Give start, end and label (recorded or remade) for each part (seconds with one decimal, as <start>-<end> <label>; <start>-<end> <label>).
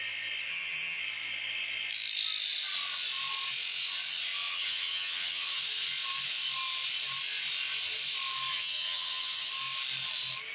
0.0-0.5 recorded; 0.5-1.0 remade; 1.0-4.5 recorded; 4.5-5.6 remade; 5.6-8.5 recorded; 8.5-9.5 remade; 9.5-10.5 recorded